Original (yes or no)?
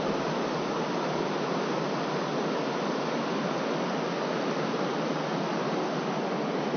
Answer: yes